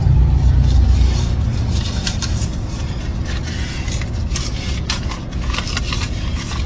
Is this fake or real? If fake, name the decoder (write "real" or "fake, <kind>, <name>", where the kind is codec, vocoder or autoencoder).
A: real